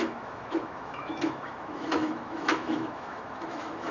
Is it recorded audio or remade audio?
remade